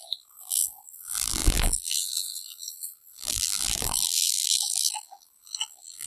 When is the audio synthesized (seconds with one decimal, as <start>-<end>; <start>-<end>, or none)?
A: 0.0-6.1